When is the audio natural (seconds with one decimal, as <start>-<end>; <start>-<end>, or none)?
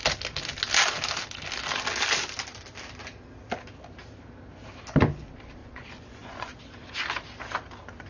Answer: 0.0-5.6; 6.6-8.1